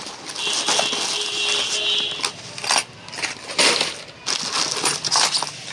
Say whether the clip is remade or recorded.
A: recorded